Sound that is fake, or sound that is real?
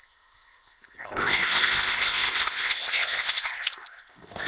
fake